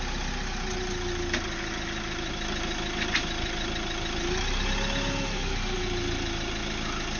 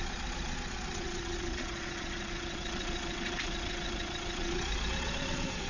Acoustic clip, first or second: first